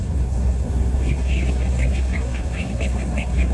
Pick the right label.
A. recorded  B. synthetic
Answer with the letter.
B